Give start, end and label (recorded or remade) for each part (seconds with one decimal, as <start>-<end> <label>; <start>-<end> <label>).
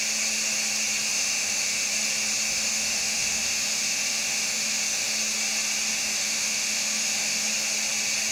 0.0-1.1 recorded; 1.1-1.9 remade; 1.9-2.5 recorded; 2.5-5.1 remade; 5.1-5.9 recorded; 5.9-7.5 remade; 7.5-8.3 recorded